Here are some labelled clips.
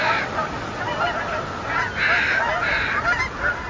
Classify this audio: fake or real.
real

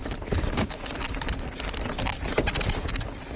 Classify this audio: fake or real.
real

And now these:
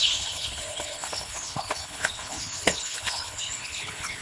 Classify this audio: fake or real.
fake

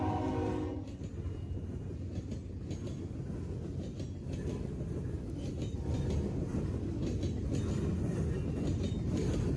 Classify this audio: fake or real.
real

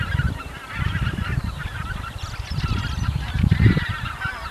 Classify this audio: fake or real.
fake